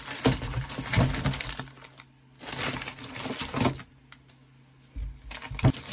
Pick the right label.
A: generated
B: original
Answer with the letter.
B